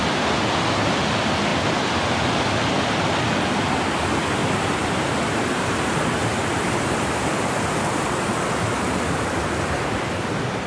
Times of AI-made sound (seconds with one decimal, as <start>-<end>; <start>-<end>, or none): 4.4-7.2